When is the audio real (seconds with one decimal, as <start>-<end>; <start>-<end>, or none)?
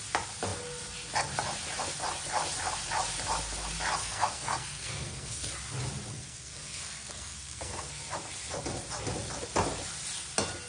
0.0-4.0; 5.5-6.1; 8.0-10.7